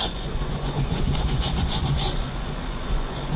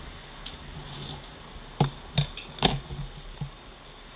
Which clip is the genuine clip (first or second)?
second